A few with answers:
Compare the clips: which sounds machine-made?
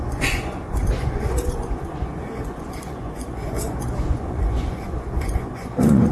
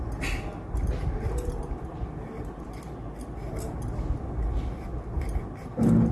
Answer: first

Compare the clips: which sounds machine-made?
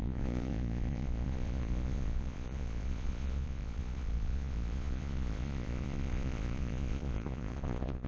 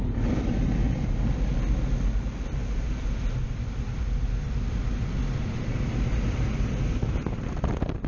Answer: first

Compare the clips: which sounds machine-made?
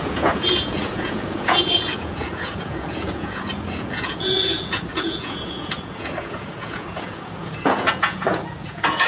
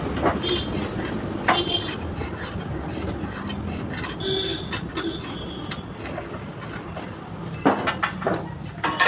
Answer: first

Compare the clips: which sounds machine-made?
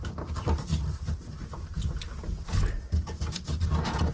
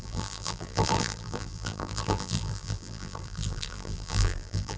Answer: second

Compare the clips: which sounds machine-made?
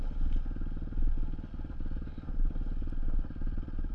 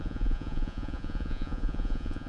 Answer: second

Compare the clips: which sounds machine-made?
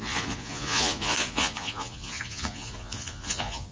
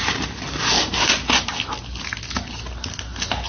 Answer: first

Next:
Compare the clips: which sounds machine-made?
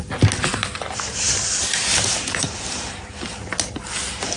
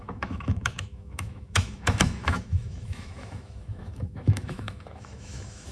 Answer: second